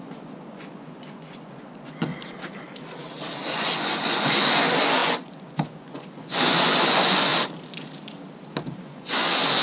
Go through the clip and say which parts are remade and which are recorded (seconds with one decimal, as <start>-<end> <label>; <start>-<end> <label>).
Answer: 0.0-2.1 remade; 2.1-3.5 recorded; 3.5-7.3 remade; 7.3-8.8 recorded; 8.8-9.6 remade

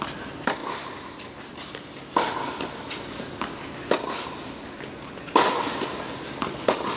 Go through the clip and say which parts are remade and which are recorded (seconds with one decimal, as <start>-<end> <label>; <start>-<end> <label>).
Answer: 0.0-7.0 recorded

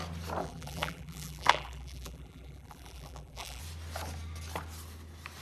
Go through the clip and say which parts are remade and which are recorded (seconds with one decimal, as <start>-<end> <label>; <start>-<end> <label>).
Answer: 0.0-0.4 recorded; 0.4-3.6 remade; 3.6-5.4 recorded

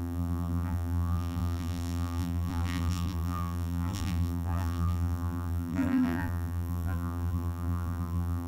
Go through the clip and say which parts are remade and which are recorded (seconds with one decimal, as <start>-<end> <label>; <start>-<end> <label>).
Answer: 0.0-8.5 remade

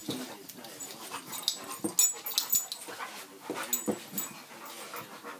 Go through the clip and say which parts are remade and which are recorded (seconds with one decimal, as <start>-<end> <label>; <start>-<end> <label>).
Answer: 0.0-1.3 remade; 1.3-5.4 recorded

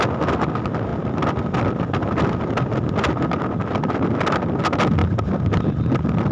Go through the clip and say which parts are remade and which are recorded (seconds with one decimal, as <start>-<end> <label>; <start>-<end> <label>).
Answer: 0.0-0.9 recorded; 0.9-3.0 remade; 3.0-5.0 recorded; 5.0-6.3 remade